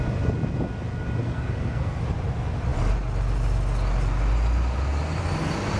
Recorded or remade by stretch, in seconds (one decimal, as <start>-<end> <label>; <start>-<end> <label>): 0.0-1.2 recorded; 1.2-2.0 remade; 2.0-5.8 recorded